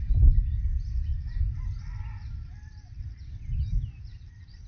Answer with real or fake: real